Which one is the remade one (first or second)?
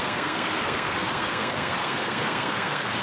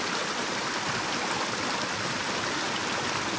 first